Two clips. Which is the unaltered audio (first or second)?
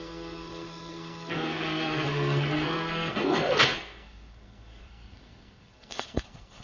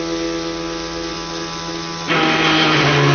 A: second